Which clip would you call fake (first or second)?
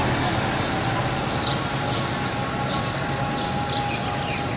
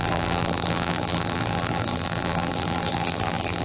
second